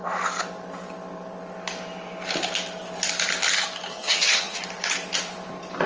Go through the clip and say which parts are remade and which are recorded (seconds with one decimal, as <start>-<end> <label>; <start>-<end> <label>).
0.0-3.9 recorded; 3.9-4.6 remade; 4.6-5.9 recorded